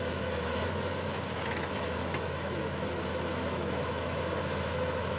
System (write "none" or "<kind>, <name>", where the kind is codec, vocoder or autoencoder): autoencoder, DAC-VAE